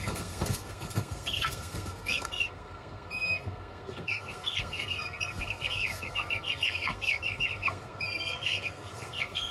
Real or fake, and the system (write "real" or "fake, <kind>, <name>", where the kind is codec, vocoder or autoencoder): fake, codec, SNAC